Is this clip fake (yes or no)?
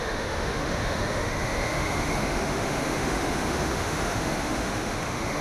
yes